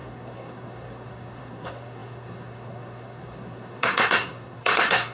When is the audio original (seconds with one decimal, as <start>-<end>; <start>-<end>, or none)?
none